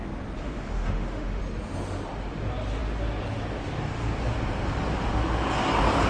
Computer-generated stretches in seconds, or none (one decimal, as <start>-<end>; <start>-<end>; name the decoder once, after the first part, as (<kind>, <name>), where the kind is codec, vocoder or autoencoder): 0.4-1.4 (autoencoder, DAC-VAE)